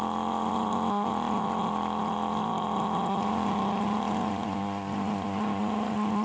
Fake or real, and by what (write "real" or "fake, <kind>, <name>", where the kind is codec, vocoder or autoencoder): real